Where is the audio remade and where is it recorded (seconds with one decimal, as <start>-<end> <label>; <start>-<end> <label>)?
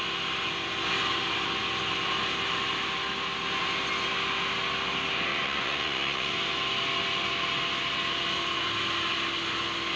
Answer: 0.0-5.3 recorded; 5.3-6.4 remade; 6.4-10.0 recorded